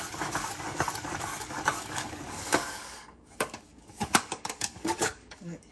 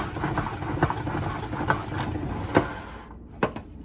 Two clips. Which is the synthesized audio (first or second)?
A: first